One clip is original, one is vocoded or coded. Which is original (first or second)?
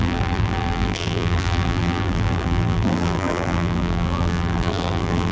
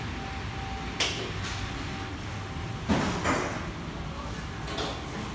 second